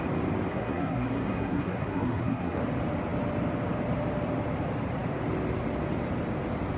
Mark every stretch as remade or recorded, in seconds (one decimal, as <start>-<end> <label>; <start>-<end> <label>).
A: 0.0-0.5 recorded; 0.5-2.6 remade; 2.6-6.8 recorded